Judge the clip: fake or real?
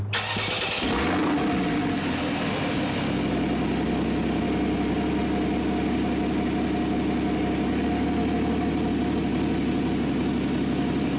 real